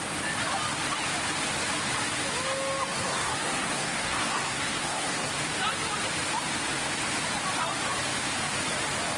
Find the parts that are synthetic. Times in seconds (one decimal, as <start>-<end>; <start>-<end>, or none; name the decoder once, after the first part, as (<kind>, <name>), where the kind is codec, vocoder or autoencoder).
2.9-5.3 (codec, SNAC)